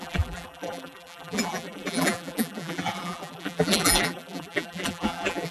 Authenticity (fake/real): fake